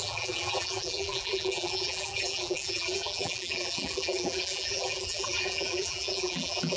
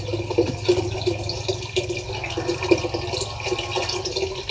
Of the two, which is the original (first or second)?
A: second